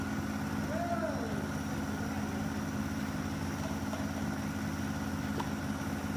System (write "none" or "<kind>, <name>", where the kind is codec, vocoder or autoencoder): none